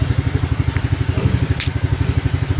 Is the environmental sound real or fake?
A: real